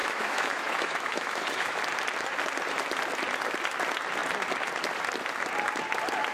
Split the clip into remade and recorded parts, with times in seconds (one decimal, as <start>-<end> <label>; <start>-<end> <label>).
0.0-1.8 remade; 1.8-6.3 recorded

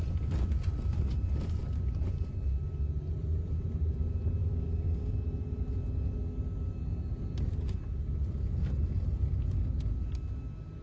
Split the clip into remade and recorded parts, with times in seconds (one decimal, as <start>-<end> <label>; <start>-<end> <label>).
0.0-4.4 recorded; 4.4-5.1 remade; 5.1-10.8 recorded